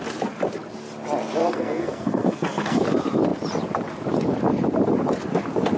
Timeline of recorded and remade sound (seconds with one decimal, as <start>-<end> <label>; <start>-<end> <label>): 0.0-1.4 recorded; 1.4-2.8 remade; 2.8-5.8 recorded